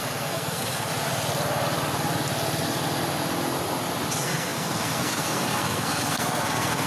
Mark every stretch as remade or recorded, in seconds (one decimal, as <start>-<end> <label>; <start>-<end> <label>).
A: 0.0-0.9 remade; 0.9-4.1 recorded; 4.1-6.9 remade